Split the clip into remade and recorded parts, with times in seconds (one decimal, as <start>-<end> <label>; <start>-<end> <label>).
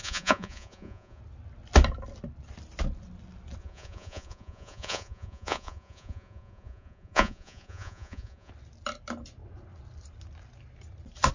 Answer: 0.0-1.2 remade; 1.2-3.6 recorded; 3.6-8.5 remade; 8.5-11.3 recorded